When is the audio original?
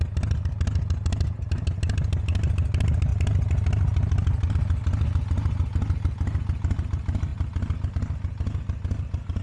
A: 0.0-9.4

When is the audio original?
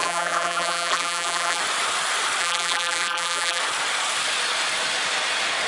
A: 1.6-2.4; 3.6-5.7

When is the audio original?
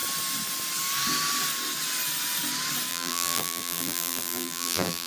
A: 0.0-2.9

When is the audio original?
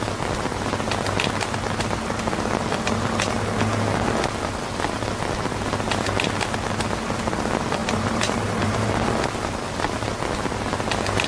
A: 0.0-7.8; 8.9-11.3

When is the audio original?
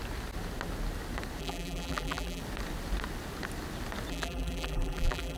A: 0.0-1.4; 2.4-4.1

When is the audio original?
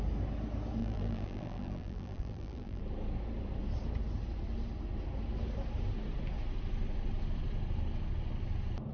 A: 0.0-0.8; 2.8-8.9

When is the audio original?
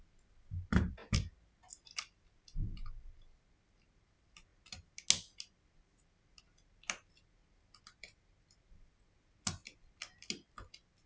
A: 0.0-11.1